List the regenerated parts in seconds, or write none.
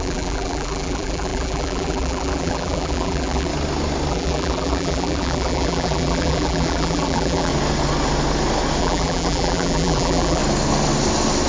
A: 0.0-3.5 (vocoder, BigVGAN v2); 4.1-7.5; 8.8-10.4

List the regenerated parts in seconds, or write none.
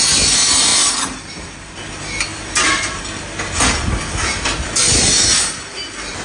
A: 0.7-1.7 (vocoder, BigVGAN v2); 2.3-3.0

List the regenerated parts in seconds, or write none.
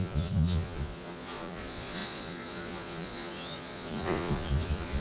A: 0.0-5.0 (vocoder, Vocos)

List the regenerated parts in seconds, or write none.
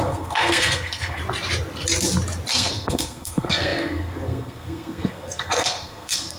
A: 0.0-1.2 (codec, SNAC); 2.5-6.4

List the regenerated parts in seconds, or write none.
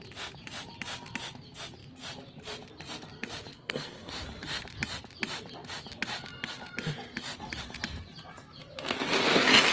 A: 3.5-4.1 (codec, SNAC)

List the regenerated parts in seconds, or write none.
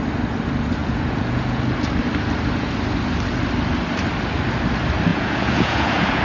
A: 0.8-1.6 (vocoder, Vocos); 5.1-6.2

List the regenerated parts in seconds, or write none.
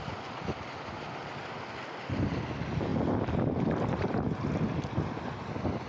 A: none